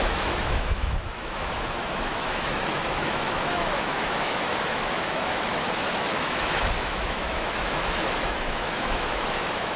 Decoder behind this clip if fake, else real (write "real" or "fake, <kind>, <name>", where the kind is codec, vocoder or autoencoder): fake, autoencoder, DAC-VAE